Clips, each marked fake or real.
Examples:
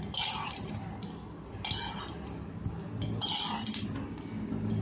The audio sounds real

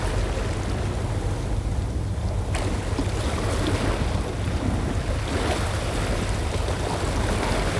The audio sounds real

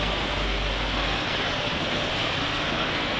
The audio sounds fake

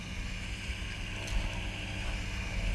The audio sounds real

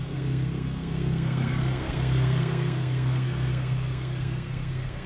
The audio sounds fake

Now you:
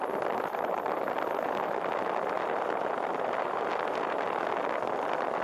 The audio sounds real